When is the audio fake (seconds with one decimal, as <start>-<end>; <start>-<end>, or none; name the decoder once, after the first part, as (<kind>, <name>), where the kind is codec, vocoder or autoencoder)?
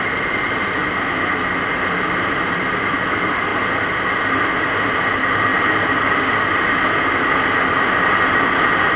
0.0-0.8 (vocoder, BigVGAN v2); 2.0-3.5; 4.9-5.5; 8.6-9.0